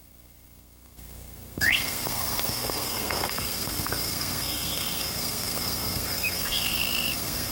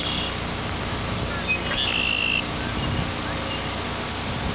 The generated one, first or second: first